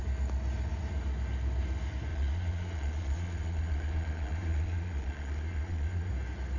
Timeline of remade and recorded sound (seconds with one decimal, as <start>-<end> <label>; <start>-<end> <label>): 0.0-2.1 recorded; 2.1-6.1 remade; 6.1-6.6 recorded